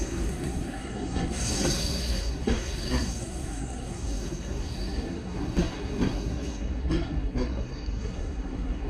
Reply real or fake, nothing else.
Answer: fake